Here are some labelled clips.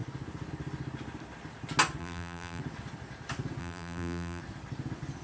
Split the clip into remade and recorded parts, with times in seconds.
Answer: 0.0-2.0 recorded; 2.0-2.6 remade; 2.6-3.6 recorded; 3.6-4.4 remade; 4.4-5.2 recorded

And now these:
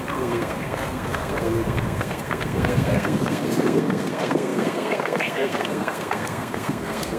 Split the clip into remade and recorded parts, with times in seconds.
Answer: 0.0-7.2 remade

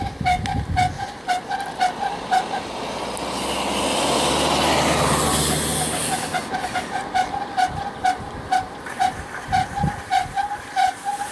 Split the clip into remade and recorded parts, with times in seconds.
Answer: 0.0-11.3 recorded

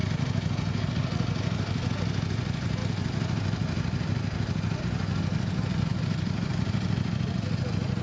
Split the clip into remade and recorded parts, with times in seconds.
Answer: 0.0-5.9 recorded; 5.9-7.3 remade; 7.3-8.0 recorded

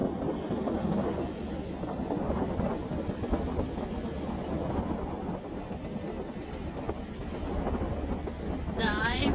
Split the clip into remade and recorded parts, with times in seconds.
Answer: 0.0-9.3 recorded

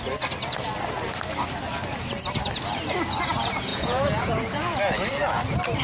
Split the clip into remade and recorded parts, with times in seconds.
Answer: 0.0-3.7 recorded; 3.7-4.8 remade; 4.8-5.8 recorded

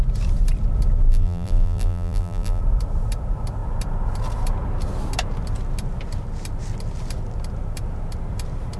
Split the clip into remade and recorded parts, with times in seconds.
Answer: 0.0-1.1 recorded; 1.1-2.6 remade; 2.6-8.8 recorded

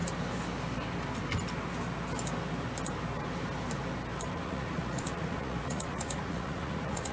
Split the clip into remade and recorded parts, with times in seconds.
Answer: 0.0-4.3 recorded; 4.3-7.1 remade